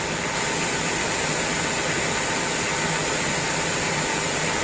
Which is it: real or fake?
real